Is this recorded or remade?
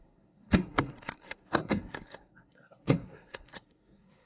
remade